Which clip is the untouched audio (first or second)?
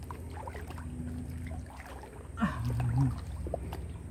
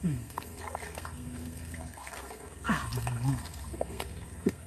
first